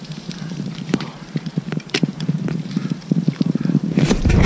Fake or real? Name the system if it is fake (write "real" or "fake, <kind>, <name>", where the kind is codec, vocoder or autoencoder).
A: fake, vocoder, BigVGAN v2